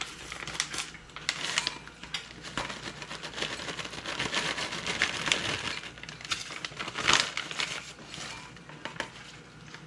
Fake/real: real